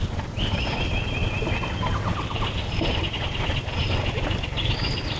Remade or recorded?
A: recorded